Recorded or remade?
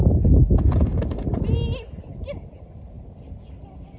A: recorded